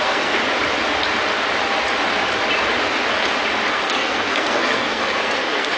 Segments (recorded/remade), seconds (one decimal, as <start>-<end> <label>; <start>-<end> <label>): 0.0-0.4 remade; 0.4-3.7 recorded; 3.7-5.8 remade